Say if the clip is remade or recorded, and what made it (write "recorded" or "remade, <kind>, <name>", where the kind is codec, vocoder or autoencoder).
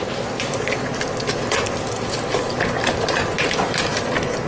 recorded